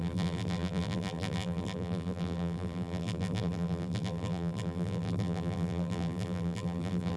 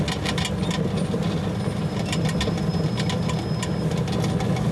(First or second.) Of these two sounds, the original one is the second